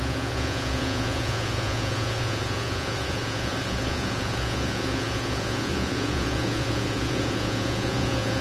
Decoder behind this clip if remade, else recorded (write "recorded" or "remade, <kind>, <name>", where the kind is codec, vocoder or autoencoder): remade, vocoder, Vocos